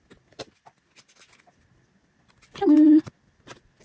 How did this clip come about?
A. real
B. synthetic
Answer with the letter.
A